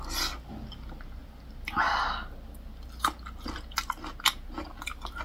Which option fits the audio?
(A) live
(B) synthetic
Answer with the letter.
A